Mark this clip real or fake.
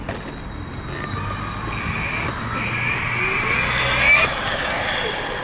real